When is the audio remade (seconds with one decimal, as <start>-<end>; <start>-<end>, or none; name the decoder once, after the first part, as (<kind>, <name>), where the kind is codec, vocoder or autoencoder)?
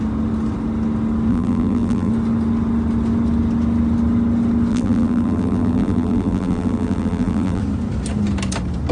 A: 1.3-2.1 (vocoder, BigVGAN v2); 4.7-7.6